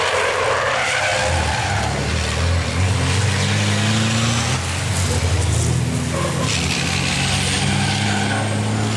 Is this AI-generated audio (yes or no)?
no